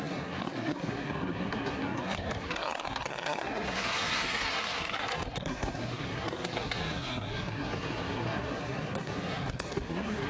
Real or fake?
fake